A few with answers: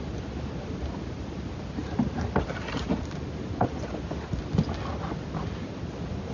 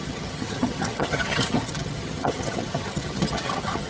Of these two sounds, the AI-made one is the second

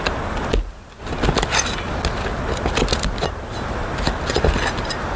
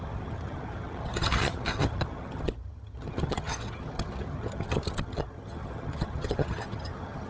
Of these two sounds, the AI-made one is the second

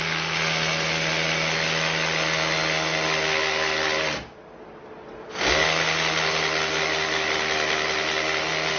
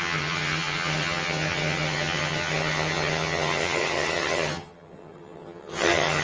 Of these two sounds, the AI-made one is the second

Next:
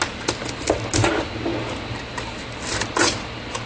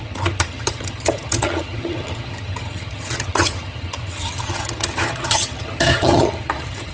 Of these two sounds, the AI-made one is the second